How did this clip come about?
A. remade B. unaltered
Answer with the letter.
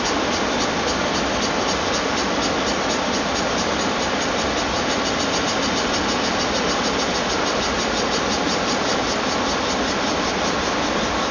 B